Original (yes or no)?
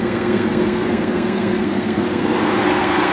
no